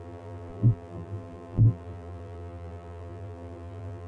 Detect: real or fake fake